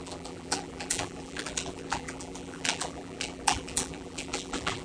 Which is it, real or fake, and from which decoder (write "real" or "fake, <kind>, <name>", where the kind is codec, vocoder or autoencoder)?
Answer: fake, vocoder, BigVGAN v2